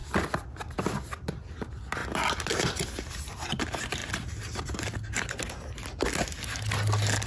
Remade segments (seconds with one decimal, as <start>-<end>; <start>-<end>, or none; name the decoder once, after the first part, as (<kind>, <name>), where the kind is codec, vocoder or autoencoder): none